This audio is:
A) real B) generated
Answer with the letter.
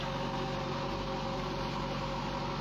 A